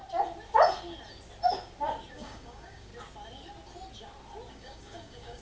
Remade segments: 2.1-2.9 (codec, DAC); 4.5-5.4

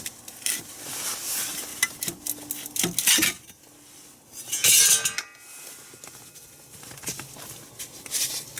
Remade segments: none